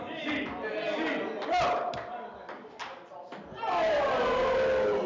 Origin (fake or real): real